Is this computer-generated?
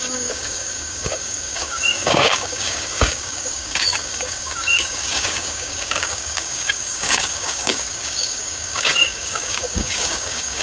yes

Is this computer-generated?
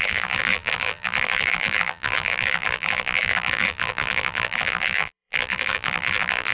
yes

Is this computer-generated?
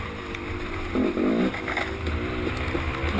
no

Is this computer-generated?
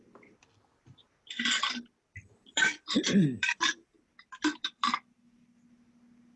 yes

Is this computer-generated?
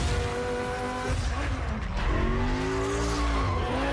no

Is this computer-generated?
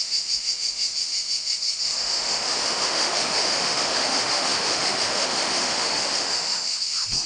yes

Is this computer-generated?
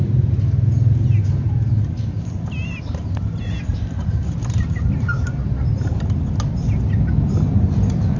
no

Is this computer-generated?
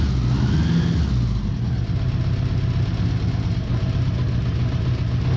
no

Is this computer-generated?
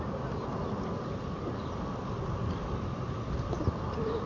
yes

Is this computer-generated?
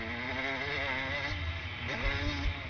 no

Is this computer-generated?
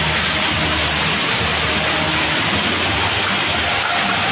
no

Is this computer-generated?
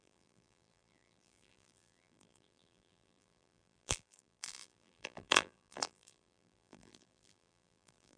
yes